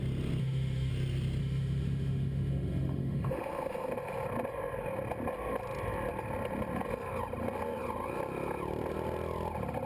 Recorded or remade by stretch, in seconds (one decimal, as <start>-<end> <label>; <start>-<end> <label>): 0.0-0.4 recorded; 0.4-0.9 remade; 0.9-1.4 recorded; 1.4-3.9 remade; 3.9-9.9 recorded